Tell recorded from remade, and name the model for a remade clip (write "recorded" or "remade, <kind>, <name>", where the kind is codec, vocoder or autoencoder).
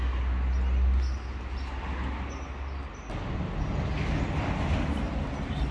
recorded